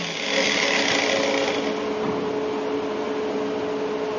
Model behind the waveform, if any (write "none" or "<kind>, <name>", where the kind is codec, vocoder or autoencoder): none